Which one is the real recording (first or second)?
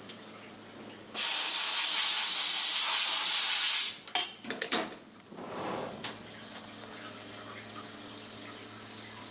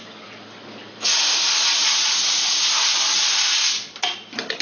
first